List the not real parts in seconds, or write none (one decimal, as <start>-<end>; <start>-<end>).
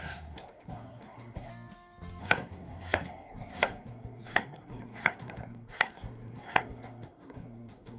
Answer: 0.0-1.5; 2.2-8.0